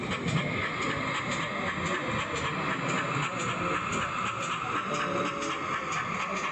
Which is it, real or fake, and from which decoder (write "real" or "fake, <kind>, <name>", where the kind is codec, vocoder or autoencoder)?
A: real